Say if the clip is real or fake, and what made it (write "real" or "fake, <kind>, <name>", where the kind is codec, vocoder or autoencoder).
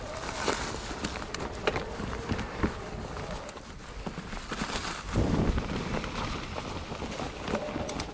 real